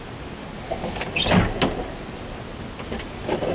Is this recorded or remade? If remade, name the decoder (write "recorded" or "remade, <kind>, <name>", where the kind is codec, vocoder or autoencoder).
recorded